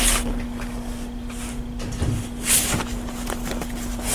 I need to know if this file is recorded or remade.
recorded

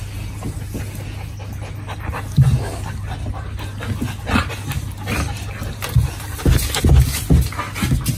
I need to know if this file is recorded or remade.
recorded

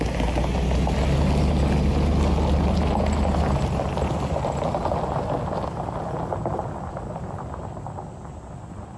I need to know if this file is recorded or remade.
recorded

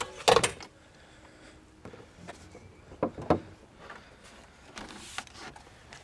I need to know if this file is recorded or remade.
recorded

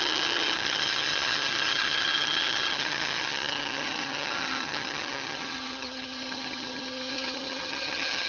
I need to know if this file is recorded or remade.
remade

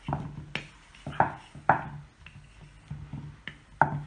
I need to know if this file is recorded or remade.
recorded